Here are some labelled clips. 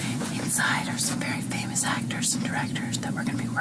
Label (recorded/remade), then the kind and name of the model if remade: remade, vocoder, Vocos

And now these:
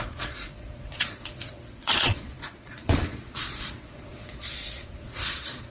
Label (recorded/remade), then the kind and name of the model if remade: remade, vocoder, Vocos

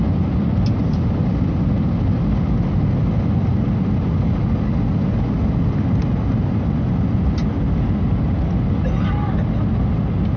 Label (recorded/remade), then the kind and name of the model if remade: recorded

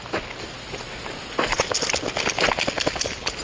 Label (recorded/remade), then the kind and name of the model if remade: recorded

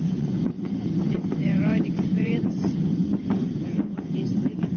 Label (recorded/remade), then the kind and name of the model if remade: remade, vocoder, Vocos